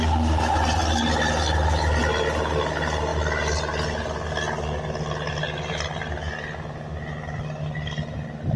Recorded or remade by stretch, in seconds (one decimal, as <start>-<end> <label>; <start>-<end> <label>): 0.0-8.6 recorded